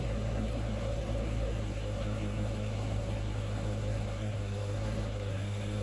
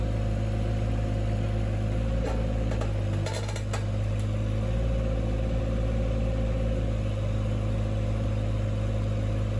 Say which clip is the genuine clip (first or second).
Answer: second